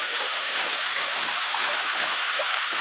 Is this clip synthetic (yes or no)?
yes